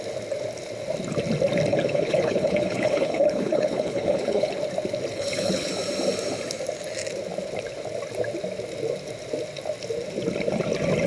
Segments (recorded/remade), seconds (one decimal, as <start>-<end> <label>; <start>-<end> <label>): 0.0-1.7 recorded; 1.7-4.5 remade; 4.5-5.1 recorded; 5.1-5.7 remade; 5.7-11.1 recorded